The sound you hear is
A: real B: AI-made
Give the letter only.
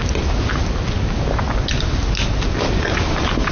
A